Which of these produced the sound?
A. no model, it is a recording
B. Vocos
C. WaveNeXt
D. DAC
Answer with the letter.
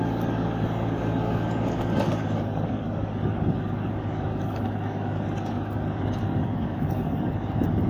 D